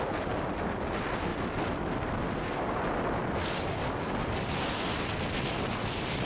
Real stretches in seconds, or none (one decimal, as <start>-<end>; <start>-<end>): 0.0-6.3